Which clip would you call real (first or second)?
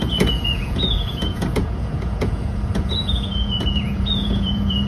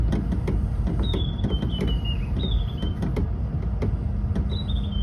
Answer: second